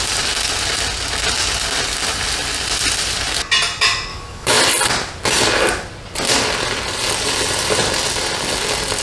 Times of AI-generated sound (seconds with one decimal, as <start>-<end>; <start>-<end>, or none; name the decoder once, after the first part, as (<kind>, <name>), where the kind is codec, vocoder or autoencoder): 4.1-4.6 (autoencoder, DAC-VAE)